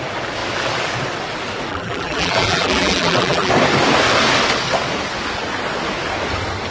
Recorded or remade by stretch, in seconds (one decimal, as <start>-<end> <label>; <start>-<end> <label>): 0.0-1.7 recorded; 1.7-3.5 remade; 3.5-6.7 recorded